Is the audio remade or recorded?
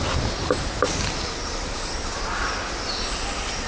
recorded